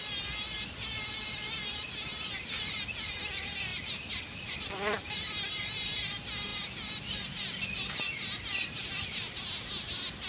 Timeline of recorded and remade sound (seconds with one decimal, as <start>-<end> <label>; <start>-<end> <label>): 0.0-10.3 recorded